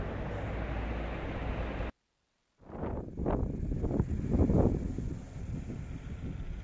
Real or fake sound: real